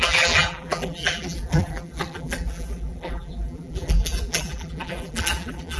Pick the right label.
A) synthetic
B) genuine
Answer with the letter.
A